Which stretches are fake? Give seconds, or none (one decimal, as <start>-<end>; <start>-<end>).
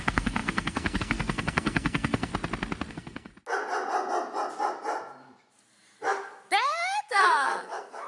0.0-2.3; 2.9-3.3; 7.0-8.1